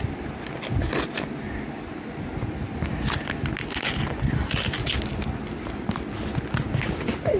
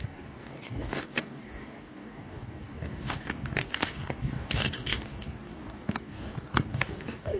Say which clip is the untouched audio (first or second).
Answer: first